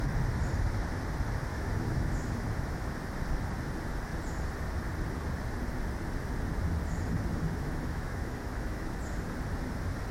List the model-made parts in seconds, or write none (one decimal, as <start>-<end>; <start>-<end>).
1.5-2.9; 7.3-8.9